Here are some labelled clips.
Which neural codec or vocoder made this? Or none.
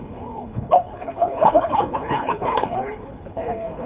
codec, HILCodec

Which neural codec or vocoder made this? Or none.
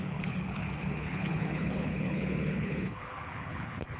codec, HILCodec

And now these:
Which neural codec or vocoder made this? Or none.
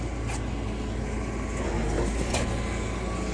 none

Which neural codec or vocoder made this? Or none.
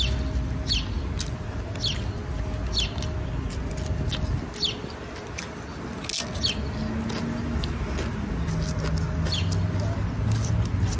none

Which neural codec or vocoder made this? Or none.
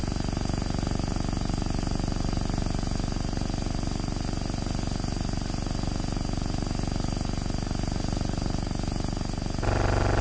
none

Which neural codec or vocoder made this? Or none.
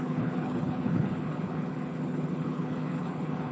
codec, HILCodec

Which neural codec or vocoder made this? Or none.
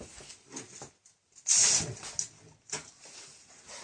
none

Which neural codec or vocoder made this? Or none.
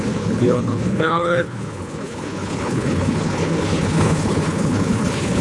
codec, HILCodec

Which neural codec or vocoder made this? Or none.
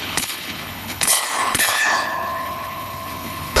codec, HILCodec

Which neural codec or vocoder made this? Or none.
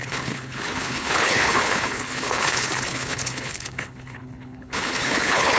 codec, HILCodec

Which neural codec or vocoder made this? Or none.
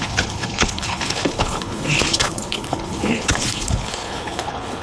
codec, HILCodec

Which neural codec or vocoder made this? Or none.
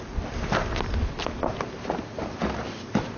none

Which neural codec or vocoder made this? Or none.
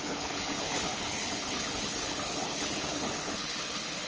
codec, HILCodec